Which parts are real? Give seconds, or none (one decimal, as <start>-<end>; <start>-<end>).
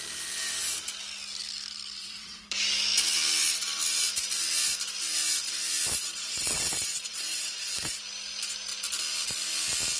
0.0-2.0; 2.5-6.0; 8.0-10.0